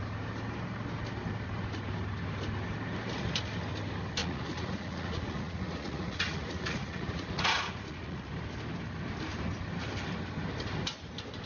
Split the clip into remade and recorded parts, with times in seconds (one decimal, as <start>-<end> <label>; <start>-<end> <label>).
0.0-4.2 recorded; 4.2-8.3 remade; 8.3-11.5 recorded